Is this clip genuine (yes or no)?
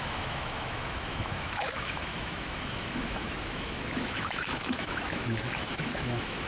no